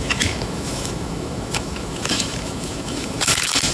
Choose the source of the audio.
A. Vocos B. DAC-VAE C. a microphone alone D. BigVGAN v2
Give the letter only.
B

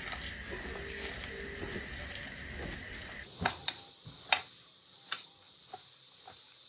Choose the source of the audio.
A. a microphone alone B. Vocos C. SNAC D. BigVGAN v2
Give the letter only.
A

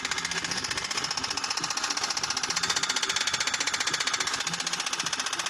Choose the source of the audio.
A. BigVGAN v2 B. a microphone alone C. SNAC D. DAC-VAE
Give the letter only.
B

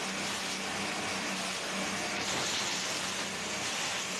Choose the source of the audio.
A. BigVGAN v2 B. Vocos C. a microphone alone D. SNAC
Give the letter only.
C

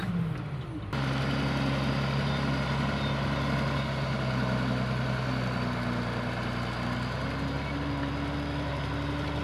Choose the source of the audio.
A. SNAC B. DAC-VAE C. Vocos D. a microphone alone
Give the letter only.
D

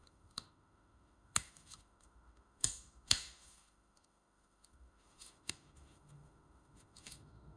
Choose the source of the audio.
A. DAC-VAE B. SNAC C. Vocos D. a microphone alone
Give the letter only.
A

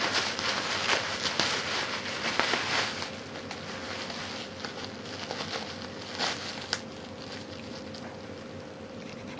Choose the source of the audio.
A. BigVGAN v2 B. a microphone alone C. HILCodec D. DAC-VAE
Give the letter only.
B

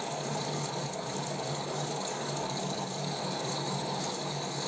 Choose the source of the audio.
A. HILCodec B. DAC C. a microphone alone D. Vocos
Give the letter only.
B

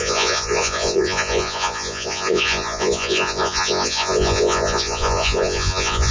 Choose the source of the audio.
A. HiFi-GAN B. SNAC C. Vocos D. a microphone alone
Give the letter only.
C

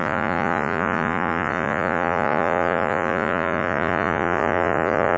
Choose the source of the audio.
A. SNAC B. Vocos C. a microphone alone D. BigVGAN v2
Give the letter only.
B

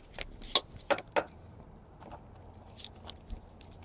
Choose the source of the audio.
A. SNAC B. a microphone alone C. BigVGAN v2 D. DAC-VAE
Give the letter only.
B